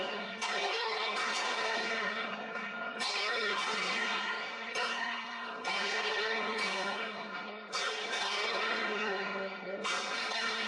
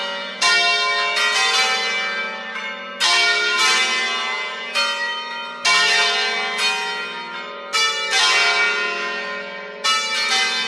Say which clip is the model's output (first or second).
first